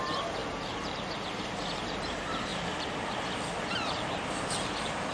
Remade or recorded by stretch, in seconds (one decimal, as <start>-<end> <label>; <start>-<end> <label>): 0.0-2.5 remade; 2.5-3.7 recorded; 3.7-5.1 remade